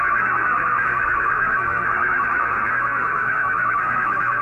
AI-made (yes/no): yes